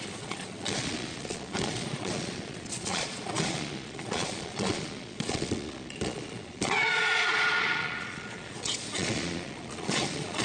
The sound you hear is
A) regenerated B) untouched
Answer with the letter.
A